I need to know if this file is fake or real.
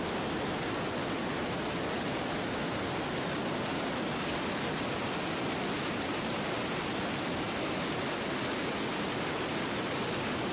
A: real